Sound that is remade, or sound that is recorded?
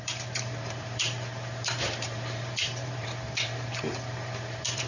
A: remade